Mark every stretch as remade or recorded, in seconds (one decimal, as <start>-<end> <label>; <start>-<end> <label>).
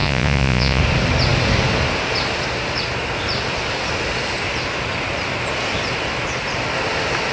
0.0-0.8 remade; 0.8-7.3 recorded